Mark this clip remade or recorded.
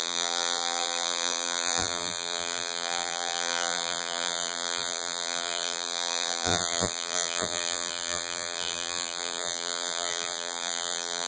remade